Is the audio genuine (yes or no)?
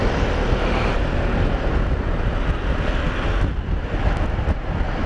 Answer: yes